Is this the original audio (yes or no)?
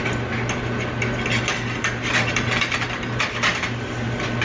yes